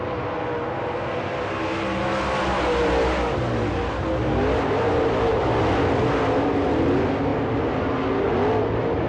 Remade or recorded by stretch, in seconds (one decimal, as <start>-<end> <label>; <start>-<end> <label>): 0.0-9.1 recorded